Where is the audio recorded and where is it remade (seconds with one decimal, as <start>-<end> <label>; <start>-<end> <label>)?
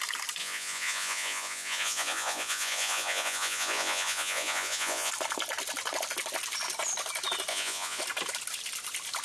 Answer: 0.0-0.4 recorded; 0.4-5.1 remade; 5.1-7.5 recorded; 7.5-8.0 remade; 8.0-9.2 recorded